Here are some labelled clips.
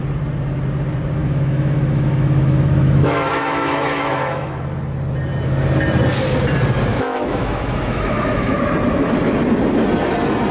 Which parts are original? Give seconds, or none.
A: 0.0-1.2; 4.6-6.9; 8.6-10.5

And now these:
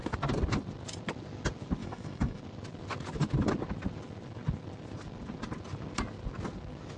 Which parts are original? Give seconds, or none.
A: 0.0-1.8; 2.4-7.0

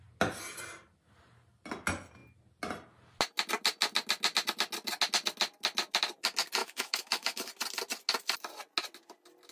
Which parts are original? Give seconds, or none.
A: 0.0-6.6; 7.5-9.5

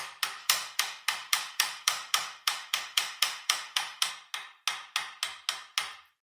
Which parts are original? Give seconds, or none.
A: 0.0-0.4; 4.1-6.2

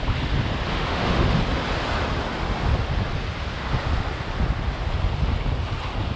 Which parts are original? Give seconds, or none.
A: 0.0-0.7; 1.4-6.2